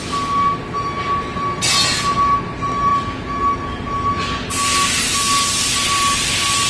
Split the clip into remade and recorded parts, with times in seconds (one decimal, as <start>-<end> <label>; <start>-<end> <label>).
0.0-6.7 recorded